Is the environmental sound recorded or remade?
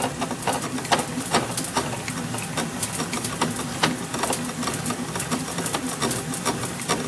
recorded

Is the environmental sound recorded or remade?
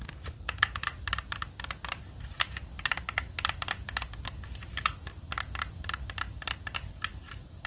recorded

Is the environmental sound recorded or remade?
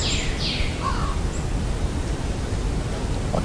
recorded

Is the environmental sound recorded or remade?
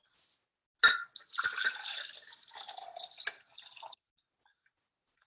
recorded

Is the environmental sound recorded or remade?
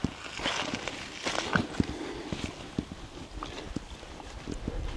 recorded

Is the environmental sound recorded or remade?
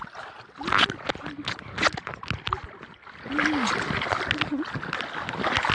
recorded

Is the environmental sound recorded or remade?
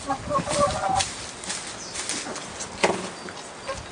recorded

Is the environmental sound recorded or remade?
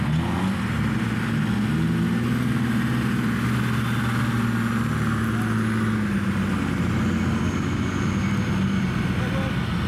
recorded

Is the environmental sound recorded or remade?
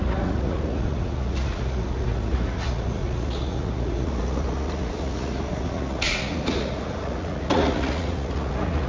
remade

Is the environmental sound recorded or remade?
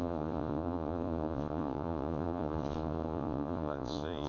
remade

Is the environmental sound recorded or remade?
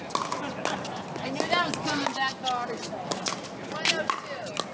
recorded